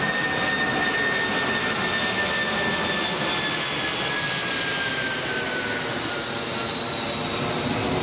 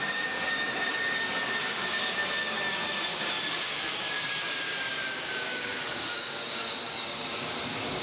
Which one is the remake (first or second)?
second